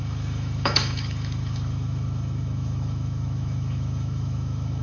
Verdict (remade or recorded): remade